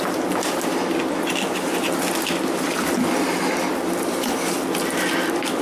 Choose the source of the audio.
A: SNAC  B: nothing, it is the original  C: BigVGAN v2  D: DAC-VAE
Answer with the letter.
B